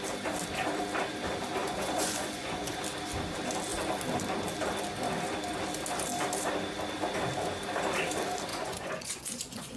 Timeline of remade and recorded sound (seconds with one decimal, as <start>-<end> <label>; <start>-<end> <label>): 0.0-1.6 recorded; 1.6-2.8 remade; 2.8-8.5 recorded; 8.5-9.8 remade